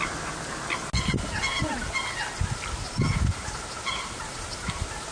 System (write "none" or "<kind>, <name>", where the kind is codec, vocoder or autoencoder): none